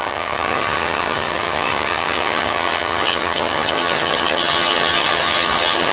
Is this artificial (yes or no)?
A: yes